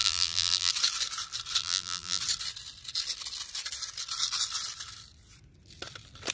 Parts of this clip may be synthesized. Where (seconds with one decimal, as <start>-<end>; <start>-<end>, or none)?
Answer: 0.0-0.7; 1.6-2.2